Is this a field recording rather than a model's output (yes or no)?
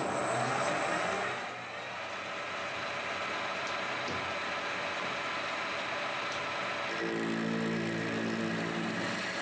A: yes